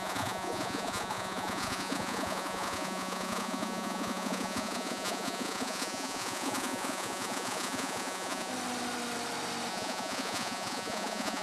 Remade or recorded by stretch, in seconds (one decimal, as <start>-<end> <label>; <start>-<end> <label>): 0.0-8.5 remade; 8.5-9.7 recorded; 9.7-11.4 remade